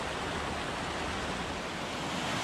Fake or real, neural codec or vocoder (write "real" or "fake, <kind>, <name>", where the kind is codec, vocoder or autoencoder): real